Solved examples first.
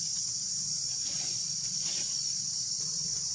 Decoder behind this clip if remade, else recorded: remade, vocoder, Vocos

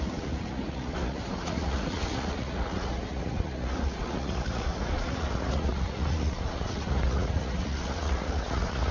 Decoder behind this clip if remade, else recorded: remade, vocoder, Vocos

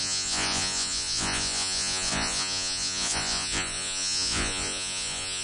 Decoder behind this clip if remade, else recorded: remade, vocoder, Vocos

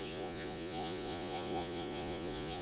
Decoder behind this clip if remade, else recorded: remade, vocoder, Vocos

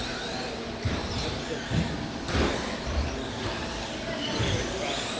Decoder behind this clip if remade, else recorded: recorded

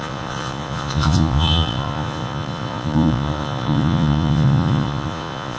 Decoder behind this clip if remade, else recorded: remade, vocoder, Vocos